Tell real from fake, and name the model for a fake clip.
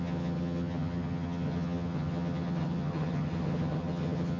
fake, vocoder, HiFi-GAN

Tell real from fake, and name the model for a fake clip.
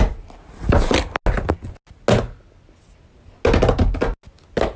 real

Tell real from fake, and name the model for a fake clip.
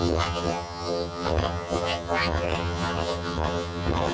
fake, vocoder, HiFi-GAN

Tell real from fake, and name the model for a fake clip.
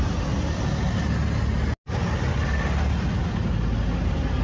real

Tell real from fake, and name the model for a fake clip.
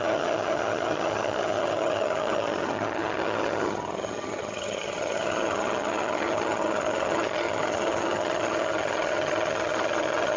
fake, vocoder, HiFi-GAN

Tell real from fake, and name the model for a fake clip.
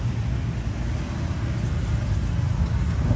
real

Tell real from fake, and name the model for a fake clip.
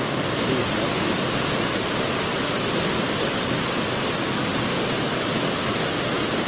real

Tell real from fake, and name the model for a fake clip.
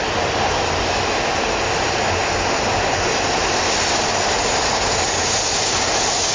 real